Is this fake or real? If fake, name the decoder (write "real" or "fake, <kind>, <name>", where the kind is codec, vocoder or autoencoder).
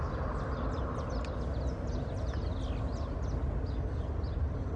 real